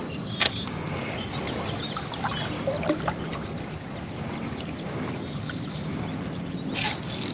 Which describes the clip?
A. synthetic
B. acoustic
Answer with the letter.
B